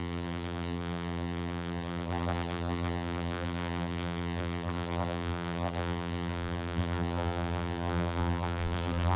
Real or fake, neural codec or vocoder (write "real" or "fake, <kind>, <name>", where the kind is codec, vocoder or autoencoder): fake, vocoder, BigVGAN v2